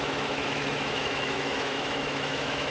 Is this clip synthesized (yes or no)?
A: yes